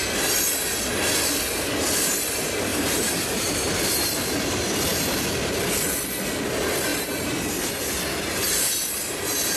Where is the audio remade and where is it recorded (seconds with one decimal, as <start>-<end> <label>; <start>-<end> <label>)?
0.0-2.7 recorded; 2.7-3.8 remade; 3.8-6.9 recorded; 6.9-7.7 remade; 7.7-9.6 recorded